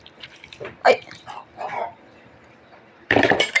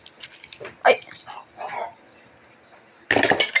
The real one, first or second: second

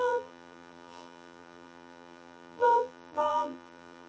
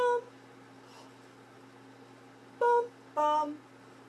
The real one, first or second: second